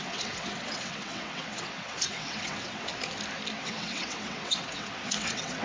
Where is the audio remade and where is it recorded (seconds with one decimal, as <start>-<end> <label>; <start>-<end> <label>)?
0.0-2.9 remade; 2.9-3.6 recorded; 3.6-5.6 remade